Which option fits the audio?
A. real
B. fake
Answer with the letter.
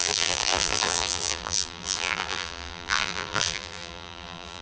B